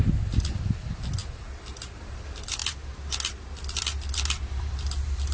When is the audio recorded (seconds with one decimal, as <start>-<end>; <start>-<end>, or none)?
0.0-5.3